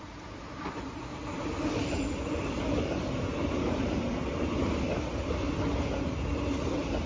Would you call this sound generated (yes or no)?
no